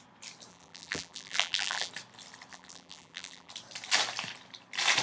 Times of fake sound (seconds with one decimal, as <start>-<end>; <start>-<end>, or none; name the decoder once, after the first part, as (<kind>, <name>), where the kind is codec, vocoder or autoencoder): 0.5-1.9 (vocoder, BigVGAN v2); 2.5-3.5